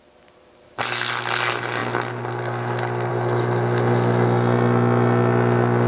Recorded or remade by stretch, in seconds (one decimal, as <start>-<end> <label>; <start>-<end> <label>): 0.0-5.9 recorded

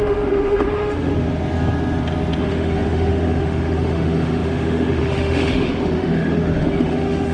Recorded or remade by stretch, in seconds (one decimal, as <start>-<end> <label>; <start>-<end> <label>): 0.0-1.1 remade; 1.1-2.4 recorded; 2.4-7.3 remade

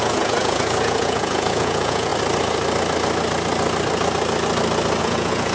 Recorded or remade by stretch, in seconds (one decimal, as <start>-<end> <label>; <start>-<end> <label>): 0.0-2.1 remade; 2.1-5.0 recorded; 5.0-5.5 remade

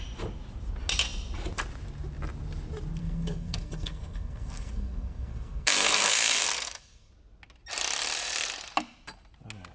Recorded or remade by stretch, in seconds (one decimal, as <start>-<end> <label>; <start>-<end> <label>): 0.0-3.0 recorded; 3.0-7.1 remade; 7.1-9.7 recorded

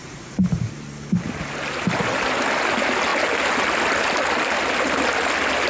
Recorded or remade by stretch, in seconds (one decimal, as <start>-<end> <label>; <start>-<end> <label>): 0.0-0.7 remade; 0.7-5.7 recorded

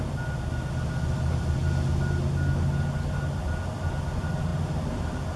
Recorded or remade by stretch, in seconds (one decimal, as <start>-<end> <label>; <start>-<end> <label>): 0.0-5.4 recorded